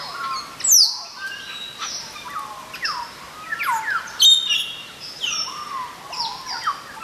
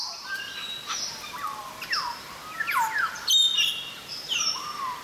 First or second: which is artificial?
second